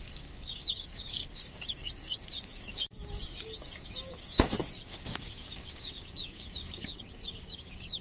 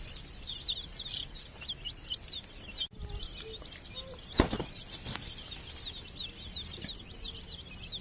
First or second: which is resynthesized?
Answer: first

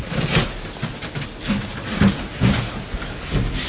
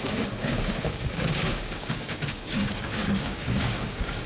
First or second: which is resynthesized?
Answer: second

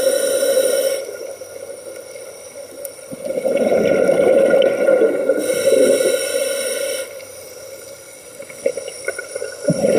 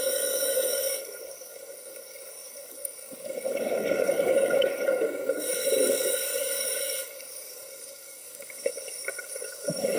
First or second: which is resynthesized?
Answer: second